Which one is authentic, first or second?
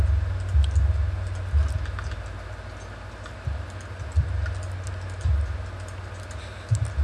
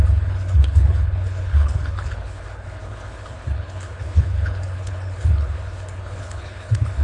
first